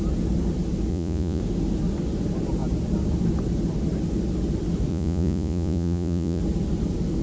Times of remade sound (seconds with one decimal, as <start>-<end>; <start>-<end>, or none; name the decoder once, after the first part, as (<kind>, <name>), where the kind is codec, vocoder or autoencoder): 0.9-1.4 (vocoder, Vocos); 4.9-6.4

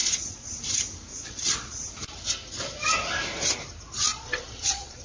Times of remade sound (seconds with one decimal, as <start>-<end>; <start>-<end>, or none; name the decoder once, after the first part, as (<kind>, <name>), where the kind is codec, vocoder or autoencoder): 0.0-0.5 (vocoder, Vocos); 1.1-1.9; 4.1-5.0